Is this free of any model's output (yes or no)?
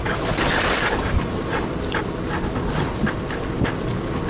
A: yes